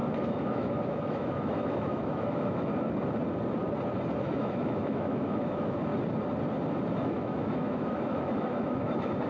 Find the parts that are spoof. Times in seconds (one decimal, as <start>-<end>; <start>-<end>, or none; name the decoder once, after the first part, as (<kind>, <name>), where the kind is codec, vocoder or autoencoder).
0.0-2.7 (autoencoder, DAC-VAE); 4.2-5.9; 6.9-9.3